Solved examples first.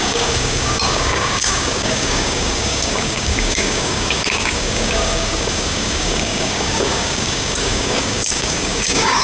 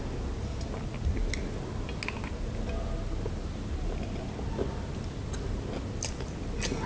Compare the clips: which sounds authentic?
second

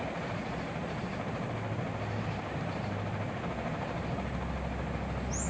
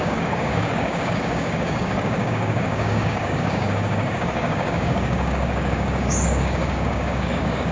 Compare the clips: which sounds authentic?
first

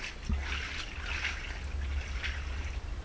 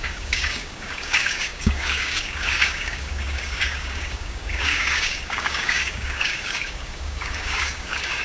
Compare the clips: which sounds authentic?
first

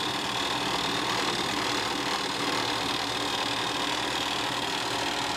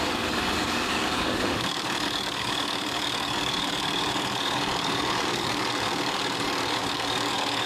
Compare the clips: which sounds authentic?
first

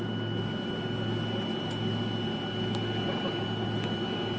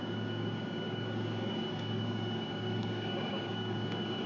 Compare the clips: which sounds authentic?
first